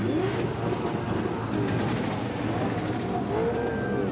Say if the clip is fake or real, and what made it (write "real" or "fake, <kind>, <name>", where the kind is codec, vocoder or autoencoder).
real